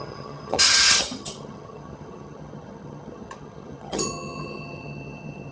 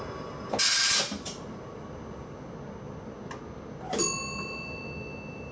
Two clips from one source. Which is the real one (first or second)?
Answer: second